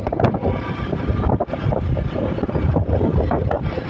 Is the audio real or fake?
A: real